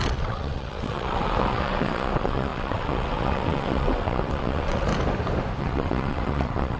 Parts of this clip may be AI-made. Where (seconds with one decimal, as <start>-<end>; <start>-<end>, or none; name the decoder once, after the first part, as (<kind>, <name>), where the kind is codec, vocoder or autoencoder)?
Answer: 0.0-4.9 (vocoder, WaveNeXt); 5.6-6.8